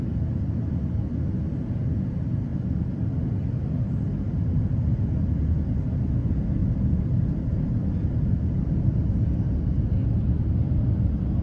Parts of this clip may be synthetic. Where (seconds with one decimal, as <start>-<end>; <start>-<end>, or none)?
2.5-4.4; 6.6-9.7